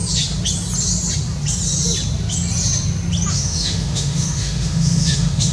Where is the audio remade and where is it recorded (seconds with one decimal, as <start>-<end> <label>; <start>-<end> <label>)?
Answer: 0.0-3.3 recorded; 3.3-5.5 remade